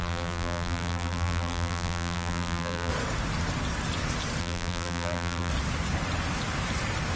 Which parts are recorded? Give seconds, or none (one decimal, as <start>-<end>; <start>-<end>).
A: 2.9-4.4; 5.5-7.2